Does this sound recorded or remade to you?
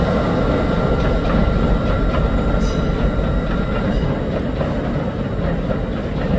recorded